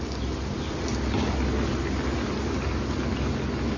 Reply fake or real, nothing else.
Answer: real